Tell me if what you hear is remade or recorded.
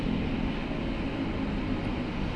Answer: recorded